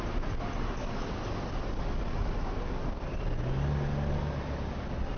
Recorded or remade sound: recorded